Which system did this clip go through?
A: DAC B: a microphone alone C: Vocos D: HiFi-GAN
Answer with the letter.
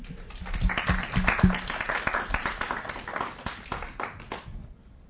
B